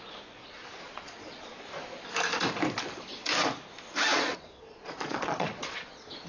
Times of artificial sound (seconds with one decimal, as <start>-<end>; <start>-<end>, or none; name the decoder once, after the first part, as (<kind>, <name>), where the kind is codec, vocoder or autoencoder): 0.4-1.7 (vocoder, Vocos); 4.1-6.3